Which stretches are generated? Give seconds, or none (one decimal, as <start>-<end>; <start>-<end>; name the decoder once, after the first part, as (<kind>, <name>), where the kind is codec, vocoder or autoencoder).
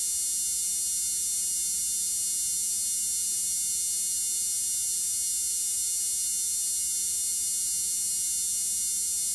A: none